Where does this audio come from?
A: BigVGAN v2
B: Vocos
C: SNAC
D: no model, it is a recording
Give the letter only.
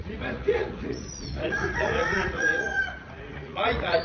B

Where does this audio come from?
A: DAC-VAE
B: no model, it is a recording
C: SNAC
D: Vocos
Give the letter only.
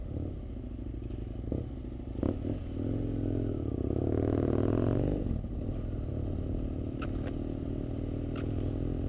B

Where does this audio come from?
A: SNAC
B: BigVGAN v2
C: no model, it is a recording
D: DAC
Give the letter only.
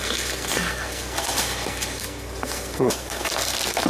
A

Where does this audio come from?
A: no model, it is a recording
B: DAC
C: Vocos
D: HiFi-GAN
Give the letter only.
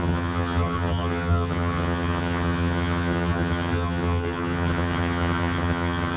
D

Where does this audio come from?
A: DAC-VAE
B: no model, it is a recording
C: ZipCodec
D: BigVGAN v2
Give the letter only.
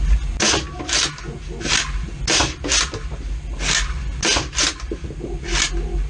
B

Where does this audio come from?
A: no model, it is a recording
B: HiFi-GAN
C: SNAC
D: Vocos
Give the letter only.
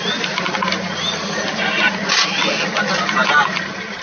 A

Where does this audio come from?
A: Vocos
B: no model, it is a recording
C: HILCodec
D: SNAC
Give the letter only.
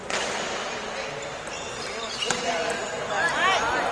B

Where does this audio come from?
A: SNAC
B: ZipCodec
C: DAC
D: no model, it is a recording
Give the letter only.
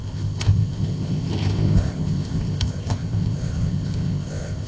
B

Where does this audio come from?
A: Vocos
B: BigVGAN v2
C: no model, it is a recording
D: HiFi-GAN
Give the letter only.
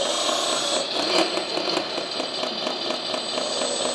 C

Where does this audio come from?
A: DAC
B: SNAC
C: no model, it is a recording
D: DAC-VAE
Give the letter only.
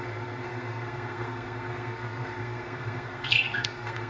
B